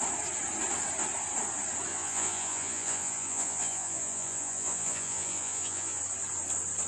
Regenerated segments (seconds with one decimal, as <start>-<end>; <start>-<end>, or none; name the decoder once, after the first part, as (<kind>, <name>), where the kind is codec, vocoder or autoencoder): 1.9-6.0 (vocoder, Vocos)